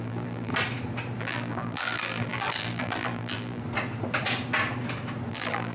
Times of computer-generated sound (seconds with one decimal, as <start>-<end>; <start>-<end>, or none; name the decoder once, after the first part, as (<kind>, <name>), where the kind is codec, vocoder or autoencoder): 0.0-0.5 (vocoder, BigVGAN v2); 1.2-3.6; 5.3-5.7